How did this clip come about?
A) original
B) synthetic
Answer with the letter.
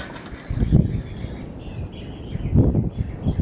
A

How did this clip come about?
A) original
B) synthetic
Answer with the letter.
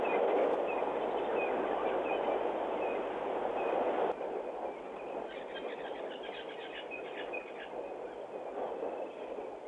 A